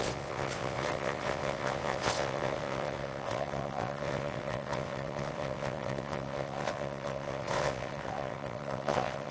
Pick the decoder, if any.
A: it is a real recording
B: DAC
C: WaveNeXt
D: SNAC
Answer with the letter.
C